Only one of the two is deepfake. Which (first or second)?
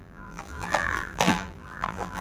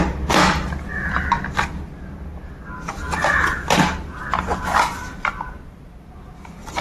first